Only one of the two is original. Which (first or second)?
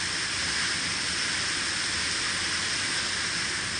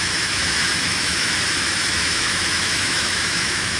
first